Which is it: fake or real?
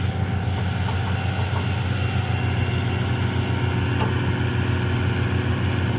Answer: real